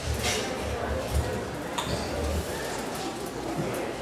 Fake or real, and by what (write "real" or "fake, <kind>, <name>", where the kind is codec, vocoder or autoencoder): real